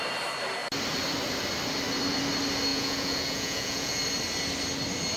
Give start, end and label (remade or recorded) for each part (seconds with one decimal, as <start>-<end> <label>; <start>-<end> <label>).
0.0-2.7 recorded; 2.7-4.0 remade; 4.0-5.2 recorded